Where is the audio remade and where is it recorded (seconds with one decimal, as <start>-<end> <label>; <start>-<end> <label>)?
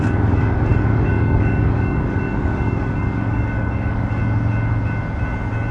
0.0-4.2 remade; 4.2-5.7 recorded